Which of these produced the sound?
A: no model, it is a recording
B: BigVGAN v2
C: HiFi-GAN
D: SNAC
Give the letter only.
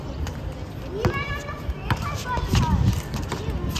A